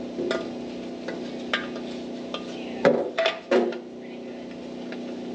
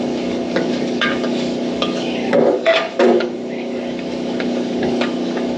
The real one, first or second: first